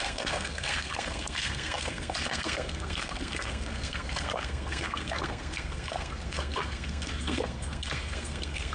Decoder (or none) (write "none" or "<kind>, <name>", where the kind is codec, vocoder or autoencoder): codec, SNAC